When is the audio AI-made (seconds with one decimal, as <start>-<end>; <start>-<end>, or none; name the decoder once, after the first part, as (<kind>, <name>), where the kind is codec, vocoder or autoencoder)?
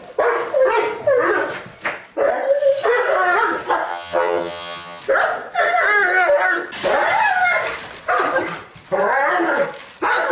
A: 3.9-5.0 (vocoder, HiFi-GAN)